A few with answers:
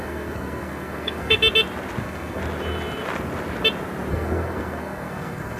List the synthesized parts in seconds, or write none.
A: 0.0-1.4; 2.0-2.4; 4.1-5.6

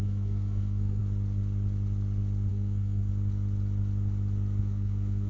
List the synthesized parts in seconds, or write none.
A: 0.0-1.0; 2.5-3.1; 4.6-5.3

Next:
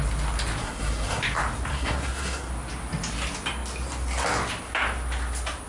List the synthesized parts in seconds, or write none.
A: 0.6-1.2; 1.7-2.5